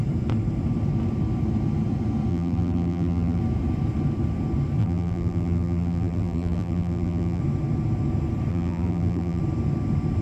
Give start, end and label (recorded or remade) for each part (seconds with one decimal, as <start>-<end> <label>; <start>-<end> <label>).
0.0-2.3 recorded; 2.3-3.4 remade; 3.4-4.8 recorded; 4.8-7.4 remade; 7.4-8.5 recorded; 8.5-9.4 remade; 9.4-10.2 recorded